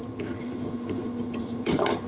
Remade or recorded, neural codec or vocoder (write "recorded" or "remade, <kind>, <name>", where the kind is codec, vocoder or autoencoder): remade, vocoder, HiFi-GAN